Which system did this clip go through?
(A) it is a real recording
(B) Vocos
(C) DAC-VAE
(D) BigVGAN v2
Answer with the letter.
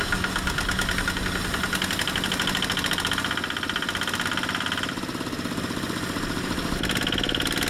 A